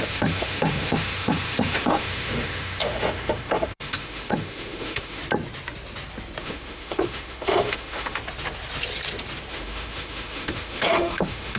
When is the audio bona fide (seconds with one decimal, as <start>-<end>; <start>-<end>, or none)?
5.2-6.4; 8.2-9.5